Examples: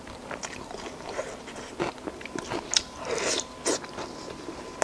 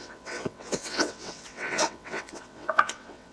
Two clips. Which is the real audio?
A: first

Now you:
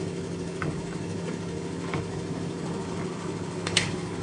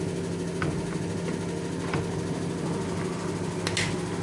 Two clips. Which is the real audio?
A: second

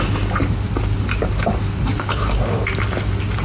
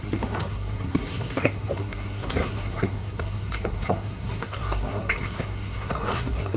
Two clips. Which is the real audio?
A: first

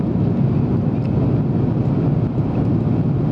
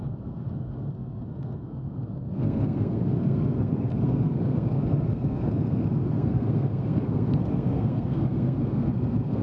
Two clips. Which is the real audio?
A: first